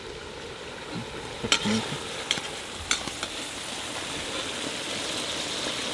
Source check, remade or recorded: recorded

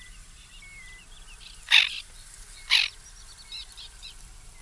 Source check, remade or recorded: remade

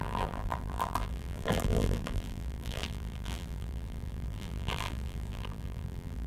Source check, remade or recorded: remade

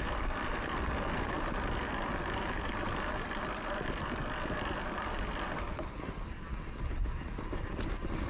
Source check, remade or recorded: recorded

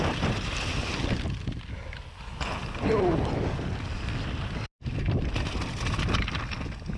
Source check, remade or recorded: recorded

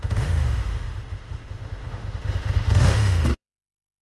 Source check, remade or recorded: remade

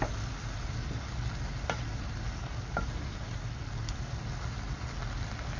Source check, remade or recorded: recorded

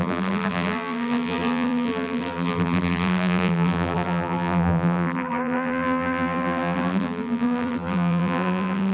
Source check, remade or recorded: remade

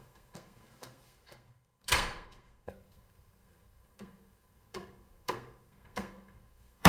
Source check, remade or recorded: remade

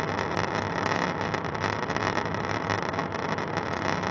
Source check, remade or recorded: recorded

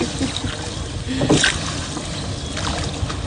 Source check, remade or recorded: recorded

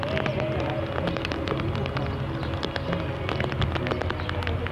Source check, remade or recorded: recorded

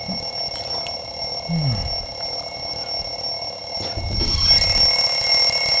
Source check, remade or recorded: recorded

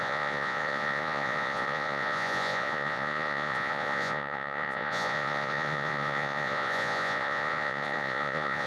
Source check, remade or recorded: remade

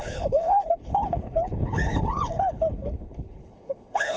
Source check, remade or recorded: remade